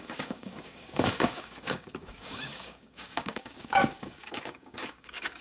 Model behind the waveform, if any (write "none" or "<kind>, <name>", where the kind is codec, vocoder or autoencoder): codec, DAC